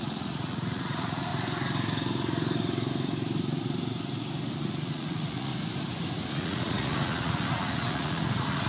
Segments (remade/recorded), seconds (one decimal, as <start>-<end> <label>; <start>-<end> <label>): 0.0-1.3 remade; 1.3-4.6 recorded; 4.6-5.5 remade; 5.5-6.3 recorded; 6.3-8.7 remade